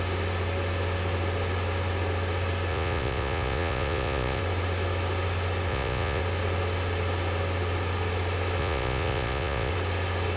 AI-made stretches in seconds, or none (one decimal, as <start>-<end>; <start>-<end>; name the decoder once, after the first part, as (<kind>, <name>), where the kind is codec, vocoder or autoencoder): 2.7-4.4 (vocoder, Vocos); 5.7-6.2; 8.6-9.7